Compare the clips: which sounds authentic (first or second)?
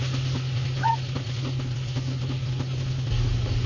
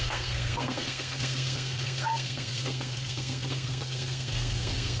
first